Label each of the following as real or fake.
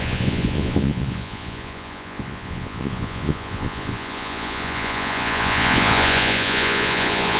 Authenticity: fake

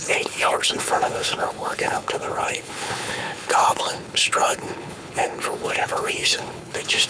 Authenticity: fake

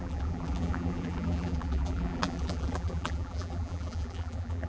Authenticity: fake